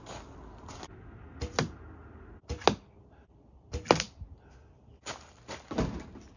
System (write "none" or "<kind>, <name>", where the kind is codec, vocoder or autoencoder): none